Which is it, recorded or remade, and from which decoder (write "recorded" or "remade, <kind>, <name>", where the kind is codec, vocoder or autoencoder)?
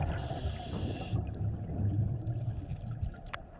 recorded